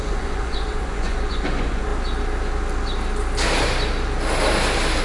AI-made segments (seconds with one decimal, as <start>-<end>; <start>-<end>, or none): 0.0-1.9